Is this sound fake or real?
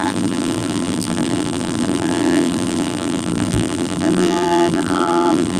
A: fake